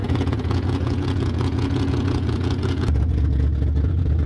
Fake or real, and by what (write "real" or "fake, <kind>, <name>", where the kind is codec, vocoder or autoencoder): fake, vocoder, Vocos